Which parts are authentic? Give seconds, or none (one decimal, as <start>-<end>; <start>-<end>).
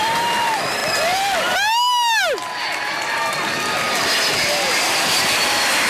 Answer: 0.8-4.3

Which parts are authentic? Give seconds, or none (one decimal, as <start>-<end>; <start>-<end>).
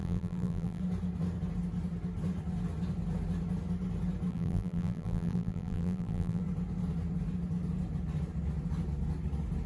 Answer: 0.8-4.3; 6.4-9.7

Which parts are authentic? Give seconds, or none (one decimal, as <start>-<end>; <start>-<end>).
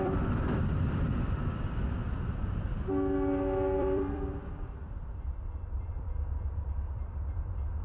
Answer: 2.0-3.8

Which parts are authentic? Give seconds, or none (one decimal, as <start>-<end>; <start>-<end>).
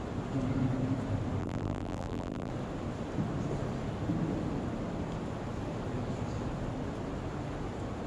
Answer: 0.0-1.4; 2.5-8.1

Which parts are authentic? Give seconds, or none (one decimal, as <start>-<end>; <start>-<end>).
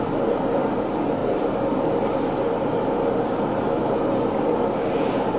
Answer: none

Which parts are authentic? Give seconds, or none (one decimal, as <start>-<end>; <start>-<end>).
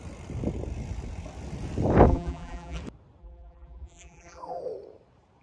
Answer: 0.0-2.1; 2.8-3.2; 4.6-5.4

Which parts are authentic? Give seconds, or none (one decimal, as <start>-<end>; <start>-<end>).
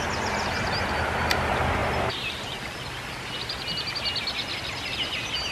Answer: 0.0-5.5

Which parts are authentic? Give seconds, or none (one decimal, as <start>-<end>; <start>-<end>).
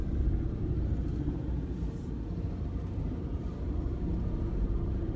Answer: 0.0-1.1; 4.2-5.2